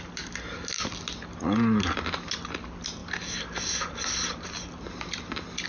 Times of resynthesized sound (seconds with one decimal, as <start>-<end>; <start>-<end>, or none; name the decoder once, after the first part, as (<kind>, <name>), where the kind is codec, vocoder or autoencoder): none